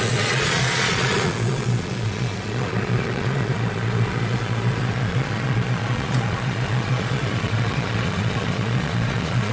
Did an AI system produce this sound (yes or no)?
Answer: yes